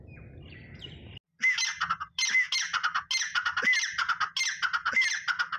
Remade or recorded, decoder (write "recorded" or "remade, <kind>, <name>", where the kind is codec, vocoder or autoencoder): recorded